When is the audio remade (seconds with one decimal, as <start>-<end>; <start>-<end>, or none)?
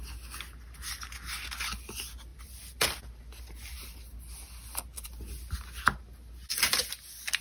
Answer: 2.3-3.2